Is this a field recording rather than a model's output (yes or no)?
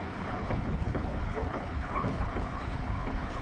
no